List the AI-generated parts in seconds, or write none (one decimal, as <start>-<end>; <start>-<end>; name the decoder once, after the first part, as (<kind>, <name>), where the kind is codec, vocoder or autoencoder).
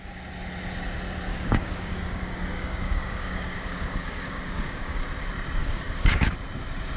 1.3-5.0 (codec, DAC); 5.6-6.3